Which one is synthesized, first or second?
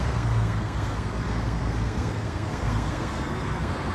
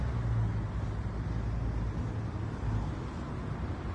first